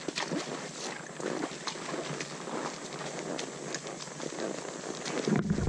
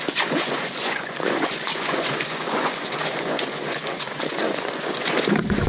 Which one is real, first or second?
first